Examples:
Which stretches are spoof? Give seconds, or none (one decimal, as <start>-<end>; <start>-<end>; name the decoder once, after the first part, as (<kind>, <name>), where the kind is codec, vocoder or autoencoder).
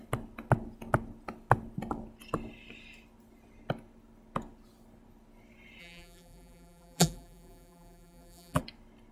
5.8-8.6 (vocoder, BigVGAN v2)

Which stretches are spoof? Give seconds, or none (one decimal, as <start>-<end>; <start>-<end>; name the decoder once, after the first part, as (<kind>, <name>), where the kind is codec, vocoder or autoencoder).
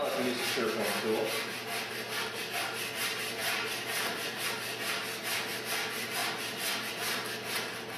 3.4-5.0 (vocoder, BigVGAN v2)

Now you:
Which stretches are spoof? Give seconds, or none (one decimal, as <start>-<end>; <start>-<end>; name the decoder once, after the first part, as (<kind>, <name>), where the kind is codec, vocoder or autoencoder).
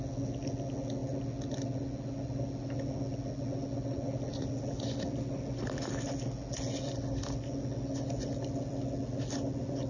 none